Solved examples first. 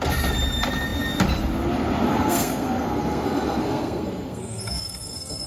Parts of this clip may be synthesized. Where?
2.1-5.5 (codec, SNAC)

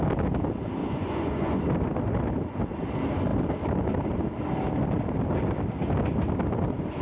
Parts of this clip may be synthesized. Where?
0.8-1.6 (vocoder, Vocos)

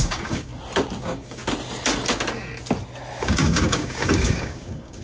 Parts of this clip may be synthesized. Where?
0.0-0.5 (codec, DAC); 1.0-1.4; 3.2-5.0